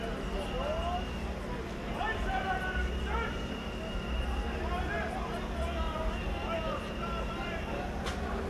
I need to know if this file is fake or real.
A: real